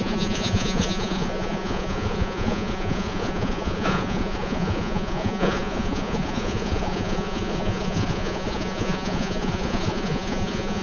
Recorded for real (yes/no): no